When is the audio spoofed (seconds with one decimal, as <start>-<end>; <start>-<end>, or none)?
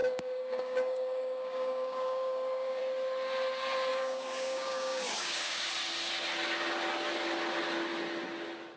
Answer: 0.0-2.8; 3.9-5.7